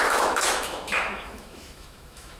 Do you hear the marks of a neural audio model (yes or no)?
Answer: yes